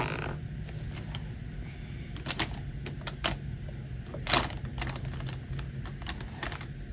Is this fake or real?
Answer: real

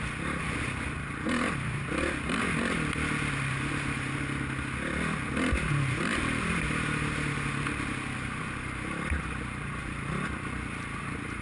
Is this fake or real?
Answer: real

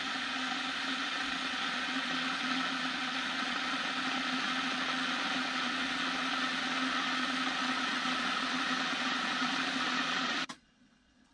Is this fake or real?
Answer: fake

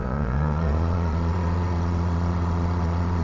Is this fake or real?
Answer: fake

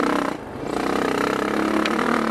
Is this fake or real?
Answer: real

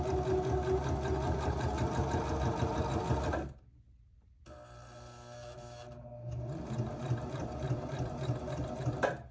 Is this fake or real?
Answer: real